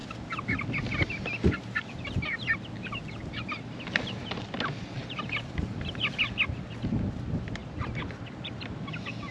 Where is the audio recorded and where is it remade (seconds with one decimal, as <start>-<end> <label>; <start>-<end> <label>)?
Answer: 0.0-7.6 recorded; 7.6-8.2 remade; 8.2-9.3 recorded